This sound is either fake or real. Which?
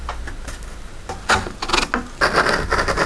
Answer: real